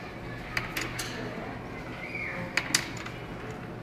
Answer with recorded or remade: recorded